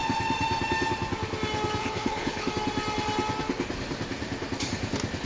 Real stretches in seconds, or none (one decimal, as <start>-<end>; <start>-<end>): 0.0-1.8; 2.5-5.3